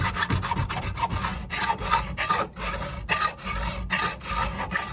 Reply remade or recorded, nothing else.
recorded